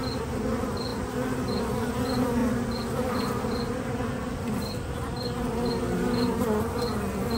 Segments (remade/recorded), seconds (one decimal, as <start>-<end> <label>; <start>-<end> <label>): 0.0-2.4 recorded; 2.4-5.7 remade; 5.7-7.4 recorded